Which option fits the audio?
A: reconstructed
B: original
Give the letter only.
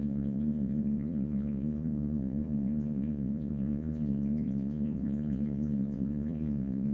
A